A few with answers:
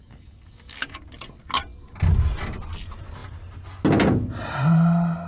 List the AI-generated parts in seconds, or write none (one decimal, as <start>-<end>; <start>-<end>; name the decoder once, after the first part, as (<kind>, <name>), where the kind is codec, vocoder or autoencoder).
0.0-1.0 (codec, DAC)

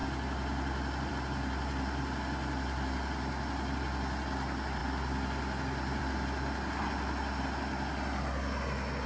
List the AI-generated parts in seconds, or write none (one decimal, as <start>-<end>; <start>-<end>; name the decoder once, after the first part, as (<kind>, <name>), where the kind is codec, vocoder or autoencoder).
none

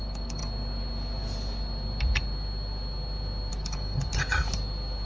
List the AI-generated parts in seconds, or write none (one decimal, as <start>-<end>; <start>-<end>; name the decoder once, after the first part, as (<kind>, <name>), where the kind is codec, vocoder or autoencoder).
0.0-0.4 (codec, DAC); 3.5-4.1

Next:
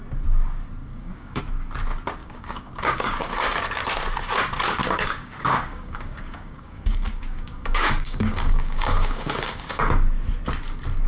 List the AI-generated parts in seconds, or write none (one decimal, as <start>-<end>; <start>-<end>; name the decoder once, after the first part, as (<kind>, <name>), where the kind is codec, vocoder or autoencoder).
0.9-1.4 (codec, DAC); 2.2-3.6; 4.8-9.9

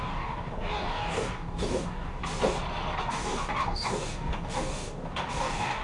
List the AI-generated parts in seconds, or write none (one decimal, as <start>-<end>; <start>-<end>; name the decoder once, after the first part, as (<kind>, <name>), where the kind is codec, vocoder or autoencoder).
0.0-2.2 (codec, DAC); 3.0-5.8

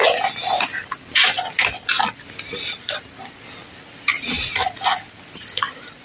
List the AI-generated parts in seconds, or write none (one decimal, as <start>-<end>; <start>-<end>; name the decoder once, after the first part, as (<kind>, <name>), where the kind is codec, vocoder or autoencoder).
none

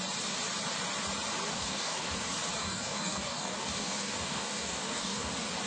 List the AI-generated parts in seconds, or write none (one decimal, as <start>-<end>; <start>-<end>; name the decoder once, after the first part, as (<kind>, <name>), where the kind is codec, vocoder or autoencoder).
1.5-2.1 (codec, DAC); 2.6-5.3